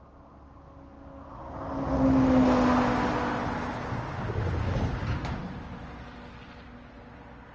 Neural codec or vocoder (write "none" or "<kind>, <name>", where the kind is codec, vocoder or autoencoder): none